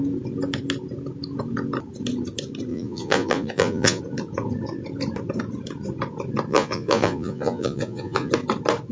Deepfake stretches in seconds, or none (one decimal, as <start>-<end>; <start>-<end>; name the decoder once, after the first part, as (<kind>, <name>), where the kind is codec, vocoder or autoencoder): 2.7-4.0 (vocoder, Vocos); 6.5-8.3